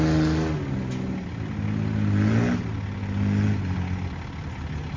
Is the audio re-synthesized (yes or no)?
no